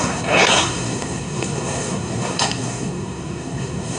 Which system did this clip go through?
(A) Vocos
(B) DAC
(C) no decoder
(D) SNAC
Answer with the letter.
D